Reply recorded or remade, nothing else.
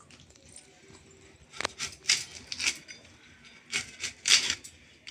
recorded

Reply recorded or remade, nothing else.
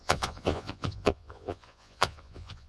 remade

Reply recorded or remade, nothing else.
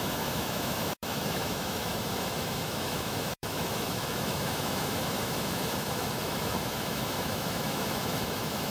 remade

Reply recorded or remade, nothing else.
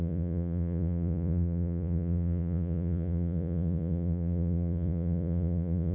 remade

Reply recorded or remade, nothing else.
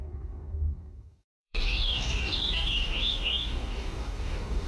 remade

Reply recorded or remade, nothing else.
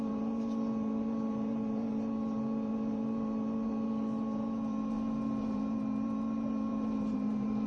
remade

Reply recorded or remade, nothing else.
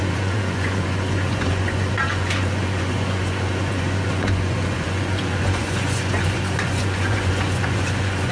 remade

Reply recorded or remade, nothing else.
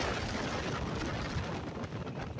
recorded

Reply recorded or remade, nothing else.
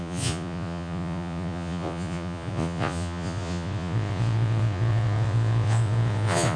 remade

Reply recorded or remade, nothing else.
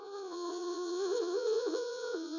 remade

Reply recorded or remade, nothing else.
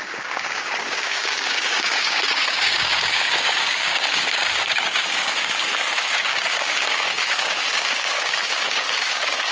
remade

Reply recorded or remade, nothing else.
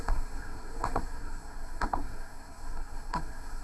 remade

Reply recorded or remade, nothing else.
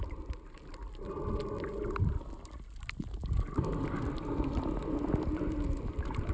recorded